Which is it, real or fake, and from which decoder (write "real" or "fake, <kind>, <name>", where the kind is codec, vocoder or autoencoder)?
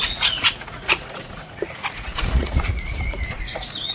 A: fake, vocoder, Vocos